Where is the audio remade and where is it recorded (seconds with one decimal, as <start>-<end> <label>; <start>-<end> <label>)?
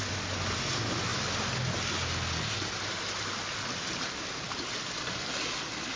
0.0-6.0 recorded